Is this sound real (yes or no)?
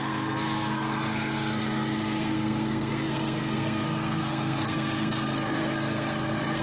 no